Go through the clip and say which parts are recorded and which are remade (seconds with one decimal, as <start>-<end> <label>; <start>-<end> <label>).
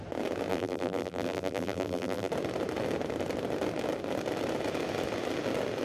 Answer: 0.0-0.5 recorded; 0.5-2.3 remade; 2.3-5.8 recorded